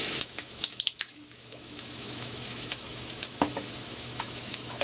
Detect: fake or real fake